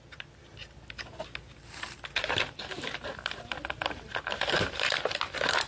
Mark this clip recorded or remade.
recorded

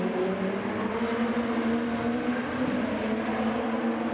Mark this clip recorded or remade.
recorded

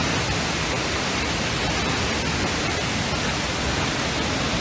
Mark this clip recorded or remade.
recorded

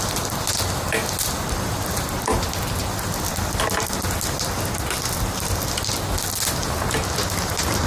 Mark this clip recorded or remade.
recorded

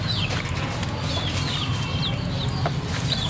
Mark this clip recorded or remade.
recorded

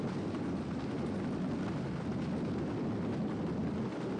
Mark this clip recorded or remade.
recorded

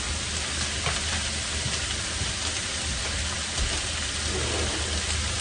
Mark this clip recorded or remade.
recorded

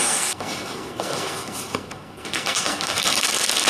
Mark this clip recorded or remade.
remade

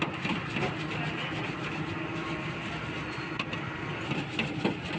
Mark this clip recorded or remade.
recorded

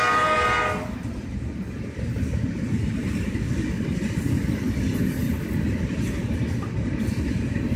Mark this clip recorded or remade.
recorded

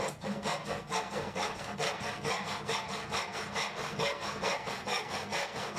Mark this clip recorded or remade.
remade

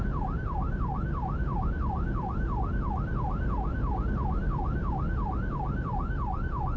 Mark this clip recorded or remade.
recorded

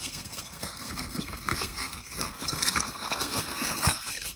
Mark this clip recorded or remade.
remade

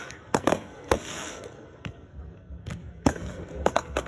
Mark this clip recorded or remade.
remade